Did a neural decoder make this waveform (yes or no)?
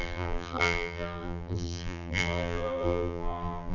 yes